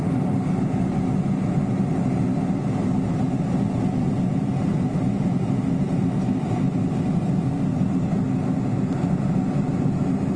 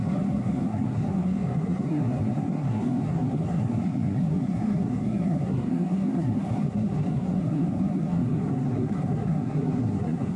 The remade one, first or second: second